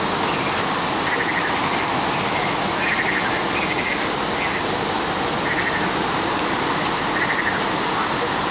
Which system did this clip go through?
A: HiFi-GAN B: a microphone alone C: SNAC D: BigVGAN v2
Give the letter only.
B